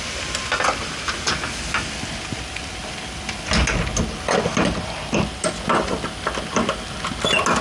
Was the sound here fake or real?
real